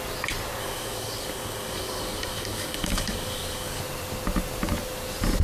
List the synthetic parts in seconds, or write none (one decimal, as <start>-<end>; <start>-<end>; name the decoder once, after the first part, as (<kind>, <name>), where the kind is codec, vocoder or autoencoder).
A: 0.6-3.8 (codec, DAC)